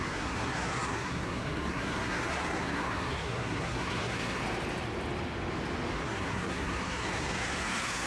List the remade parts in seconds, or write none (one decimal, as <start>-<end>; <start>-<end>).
0.0-4.4; 6.0-8.1